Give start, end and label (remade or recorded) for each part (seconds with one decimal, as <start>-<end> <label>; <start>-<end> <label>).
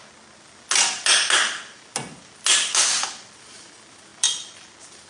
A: 0.0-5.1 recorded